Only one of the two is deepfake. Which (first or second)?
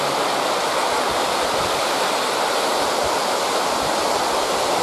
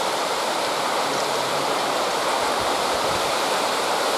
second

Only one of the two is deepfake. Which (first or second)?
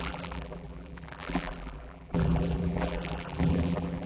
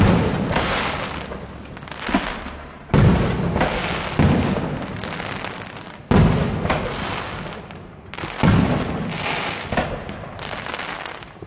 first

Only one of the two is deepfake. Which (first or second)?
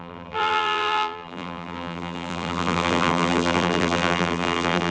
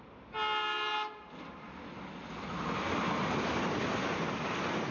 first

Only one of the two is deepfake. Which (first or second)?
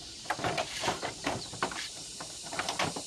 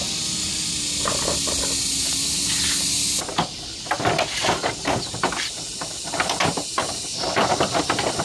first